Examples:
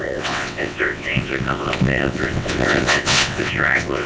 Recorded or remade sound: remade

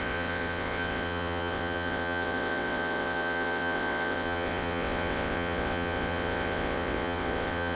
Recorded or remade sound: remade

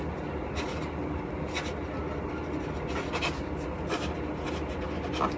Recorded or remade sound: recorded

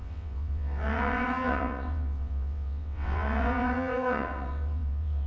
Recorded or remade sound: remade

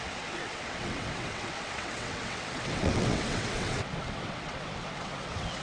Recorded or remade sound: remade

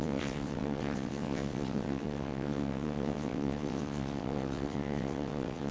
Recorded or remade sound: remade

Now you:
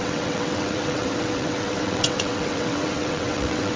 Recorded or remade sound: remade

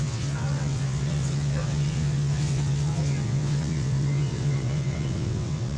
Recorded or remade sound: remade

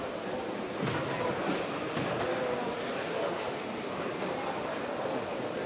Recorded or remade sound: recorded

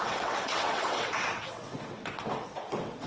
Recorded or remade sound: remade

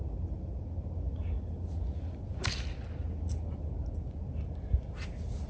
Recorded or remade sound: recorded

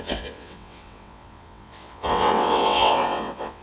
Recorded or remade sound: remade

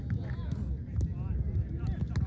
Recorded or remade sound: recorded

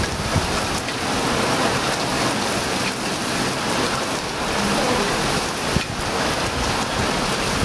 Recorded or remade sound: recorded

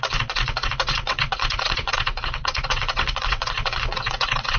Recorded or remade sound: remade